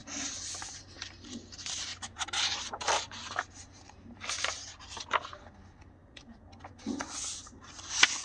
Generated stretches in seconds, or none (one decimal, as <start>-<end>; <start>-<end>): 1.9-5.0